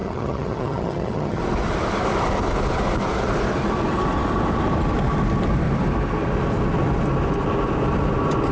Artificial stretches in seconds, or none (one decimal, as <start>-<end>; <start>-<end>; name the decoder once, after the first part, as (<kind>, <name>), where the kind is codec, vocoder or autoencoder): 0.0-1.4 (vocoder, HiFi-GAN)